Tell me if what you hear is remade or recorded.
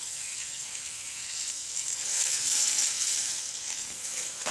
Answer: remade